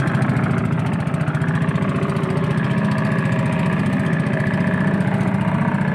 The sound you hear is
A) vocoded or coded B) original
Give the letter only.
B